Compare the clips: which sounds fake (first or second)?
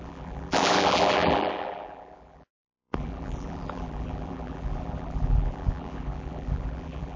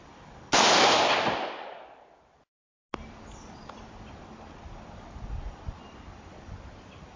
first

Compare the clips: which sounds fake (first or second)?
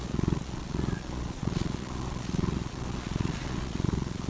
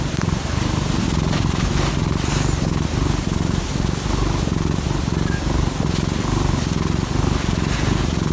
first